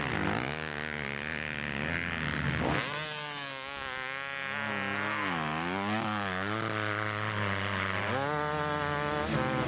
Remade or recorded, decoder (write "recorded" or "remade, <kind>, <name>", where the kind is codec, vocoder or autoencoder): recorded